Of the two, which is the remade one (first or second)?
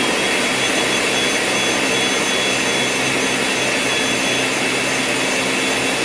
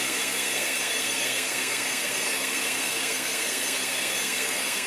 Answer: second